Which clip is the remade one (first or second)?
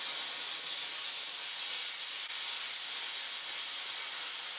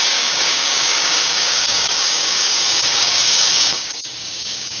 second